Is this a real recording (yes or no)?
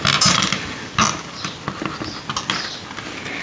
yes